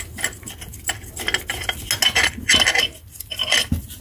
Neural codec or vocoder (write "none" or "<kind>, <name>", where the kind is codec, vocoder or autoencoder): none